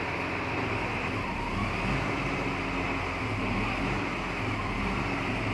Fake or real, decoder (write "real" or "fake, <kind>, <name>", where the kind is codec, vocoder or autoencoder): real